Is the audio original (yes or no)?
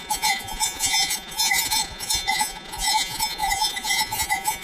no